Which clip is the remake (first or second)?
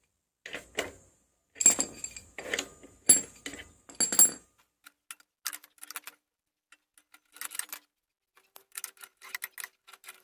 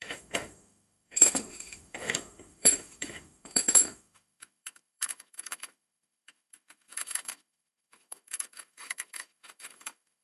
second